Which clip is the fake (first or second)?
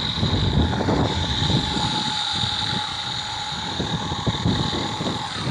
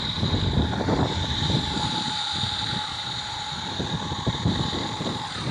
second